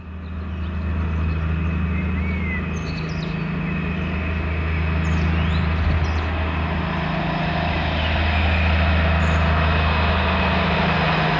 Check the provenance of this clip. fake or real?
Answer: real